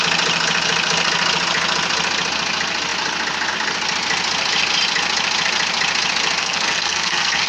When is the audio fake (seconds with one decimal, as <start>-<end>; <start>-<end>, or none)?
6.4-7.5